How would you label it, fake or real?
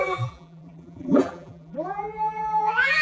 fake